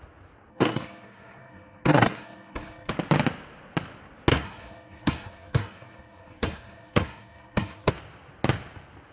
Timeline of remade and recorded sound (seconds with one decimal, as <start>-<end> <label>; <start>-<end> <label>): 0.0-0.5 recorded; 0.5-2.9 remade; 2.9-4.3 recorded; 4.3-7.9 remade; 7.9-9.1 recorded